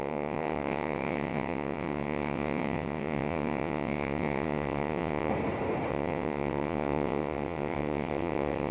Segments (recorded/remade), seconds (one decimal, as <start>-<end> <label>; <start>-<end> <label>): 0.0-5.3 remade; 5.3-5.9 recorded; 5.9-8.7 remade